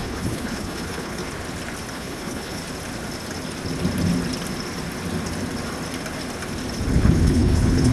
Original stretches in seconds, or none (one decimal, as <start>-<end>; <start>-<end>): 1.2-1.9; 2.6-6.9